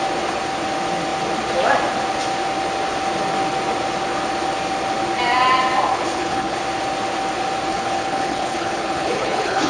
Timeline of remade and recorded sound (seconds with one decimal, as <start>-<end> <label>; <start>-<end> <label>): 0.0-5.9 recorded; 5.9-6.6 remade; 6.6-7.7 recorded; 7.7-9.7 remade